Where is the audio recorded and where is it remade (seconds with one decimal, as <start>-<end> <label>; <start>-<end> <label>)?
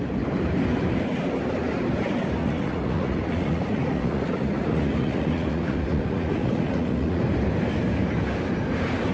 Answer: 0.0-2.4 recorded; 2.4-7.2 remade; 7.2-9.1 recorded